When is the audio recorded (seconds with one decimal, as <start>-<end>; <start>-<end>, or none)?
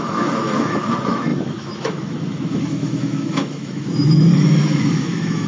none